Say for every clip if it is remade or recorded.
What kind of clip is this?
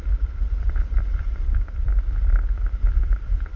remade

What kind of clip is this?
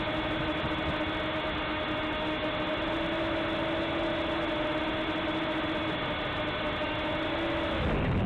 recorded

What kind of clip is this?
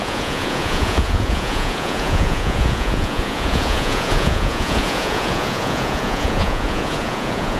remade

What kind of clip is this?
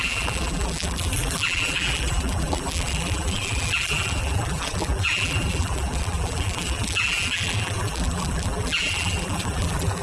remade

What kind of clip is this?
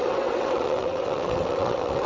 remade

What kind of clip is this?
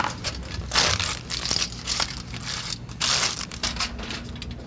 recorded